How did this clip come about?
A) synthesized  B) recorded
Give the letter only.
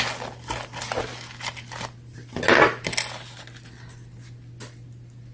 B